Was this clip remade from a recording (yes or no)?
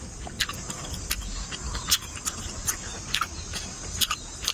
yes